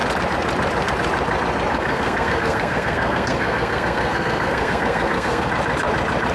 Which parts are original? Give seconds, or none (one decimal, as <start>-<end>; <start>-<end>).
0.0-1.7; 5.5-6.3